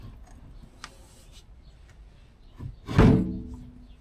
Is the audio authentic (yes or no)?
yes